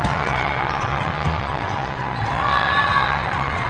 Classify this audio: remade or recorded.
remade